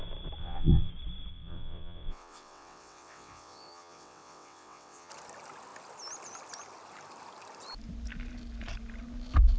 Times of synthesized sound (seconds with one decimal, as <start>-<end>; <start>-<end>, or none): 0.4-0.9; 1.3-5.1